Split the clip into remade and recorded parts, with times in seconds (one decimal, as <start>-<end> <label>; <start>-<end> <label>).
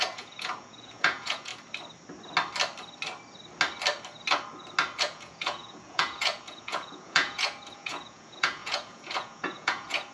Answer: 0.0-1.5 remade; 1.5-5.0 recorded; 5.0-10.1 remade